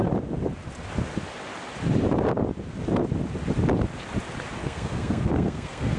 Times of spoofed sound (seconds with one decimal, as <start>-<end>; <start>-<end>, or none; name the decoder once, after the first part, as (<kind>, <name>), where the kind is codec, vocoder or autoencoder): 4.6-6.0 (codec, SNAC)